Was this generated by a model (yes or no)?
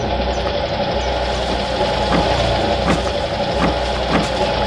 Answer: no